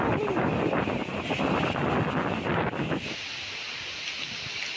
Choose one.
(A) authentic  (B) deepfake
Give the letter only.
A